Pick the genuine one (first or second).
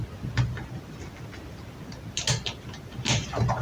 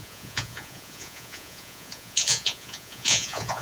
first